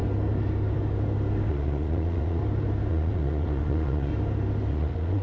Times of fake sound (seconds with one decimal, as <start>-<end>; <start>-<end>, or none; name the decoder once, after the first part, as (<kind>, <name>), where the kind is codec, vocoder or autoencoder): 1.5-2.4 (vocoder, Vocos); 2.9-4.1; 4.7-5.2